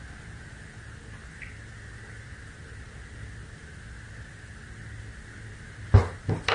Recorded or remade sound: recorded